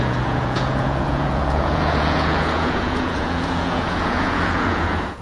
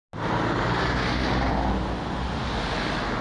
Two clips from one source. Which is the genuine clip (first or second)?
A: second